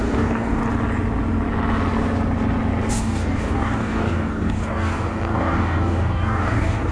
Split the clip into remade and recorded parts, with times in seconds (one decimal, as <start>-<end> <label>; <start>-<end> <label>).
0.0-0.6 remade; 0.6-2.9 recorded; 2.9-6.9 remade